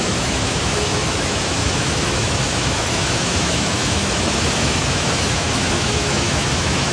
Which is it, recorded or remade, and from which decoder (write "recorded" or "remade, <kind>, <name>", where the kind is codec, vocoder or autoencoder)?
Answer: remade, autoencoder, DAC-VAE